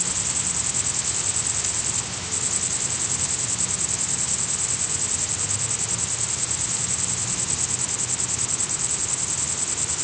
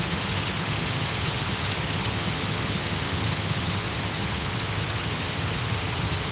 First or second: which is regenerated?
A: second